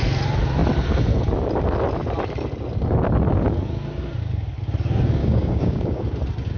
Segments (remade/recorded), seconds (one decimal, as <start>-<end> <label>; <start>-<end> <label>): 0.0-5.2 recorded; 5.2-6.0 remade; 6.0-6.6 recorded